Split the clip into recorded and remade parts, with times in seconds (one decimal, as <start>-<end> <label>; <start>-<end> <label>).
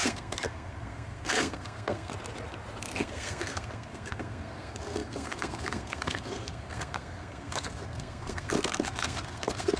0.0-2.1 remade; 2.1-2.8 recorded; 2.8-9.8 remade